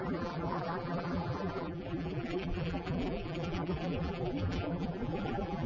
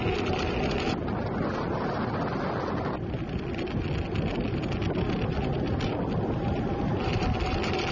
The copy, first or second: first